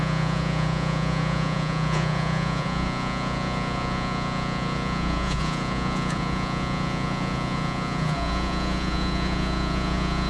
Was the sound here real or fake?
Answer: fake